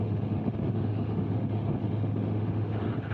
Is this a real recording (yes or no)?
no